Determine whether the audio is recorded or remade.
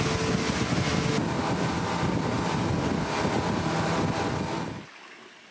recorded